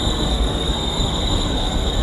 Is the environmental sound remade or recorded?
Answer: remade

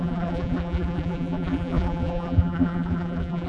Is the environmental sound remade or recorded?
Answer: remade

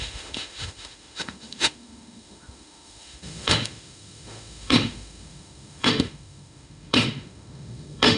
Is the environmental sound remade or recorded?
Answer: remade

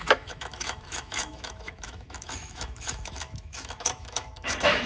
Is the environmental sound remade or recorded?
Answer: remade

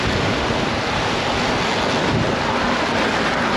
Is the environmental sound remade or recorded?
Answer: recorded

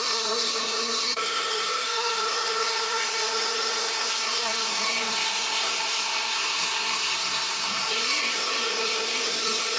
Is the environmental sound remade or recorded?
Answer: remade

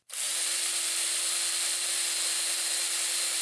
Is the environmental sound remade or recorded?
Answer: recorded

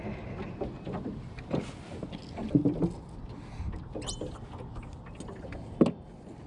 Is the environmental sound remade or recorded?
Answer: recorded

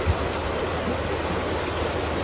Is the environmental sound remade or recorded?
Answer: recorded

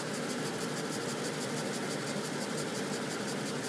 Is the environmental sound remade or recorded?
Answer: recorded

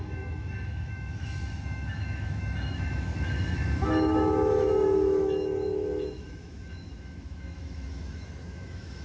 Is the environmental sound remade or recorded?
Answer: remade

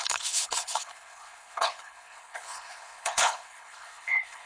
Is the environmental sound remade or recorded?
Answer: remade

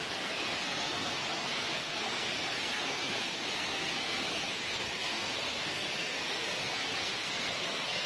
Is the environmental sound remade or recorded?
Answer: remade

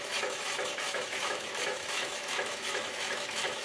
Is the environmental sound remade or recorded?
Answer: remade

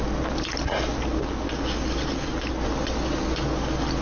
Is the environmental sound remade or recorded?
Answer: recorded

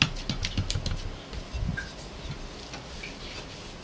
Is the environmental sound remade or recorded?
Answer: recorded